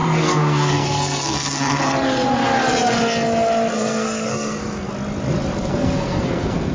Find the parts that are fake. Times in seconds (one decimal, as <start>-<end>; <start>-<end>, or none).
0.0-1.8; 3.7-4.9; 5.6-6.7